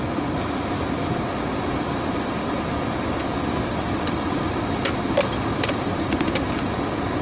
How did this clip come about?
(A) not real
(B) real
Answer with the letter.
B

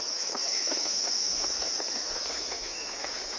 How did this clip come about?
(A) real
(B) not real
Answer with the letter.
B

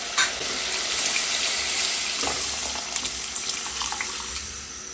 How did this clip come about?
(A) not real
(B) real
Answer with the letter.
B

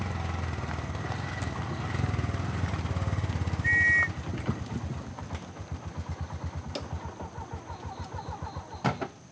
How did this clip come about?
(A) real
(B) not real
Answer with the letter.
A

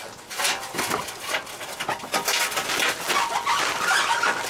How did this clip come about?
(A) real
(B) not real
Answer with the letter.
A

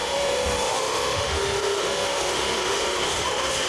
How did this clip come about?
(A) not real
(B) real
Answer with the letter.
A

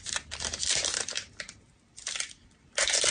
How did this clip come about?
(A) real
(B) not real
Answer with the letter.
A